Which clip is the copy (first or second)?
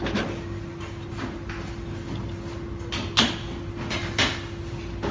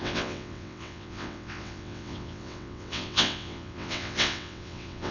second